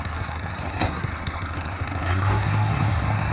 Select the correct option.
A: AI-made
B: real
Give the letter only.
A